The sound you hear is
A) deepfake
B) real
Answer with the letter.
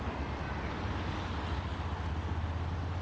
B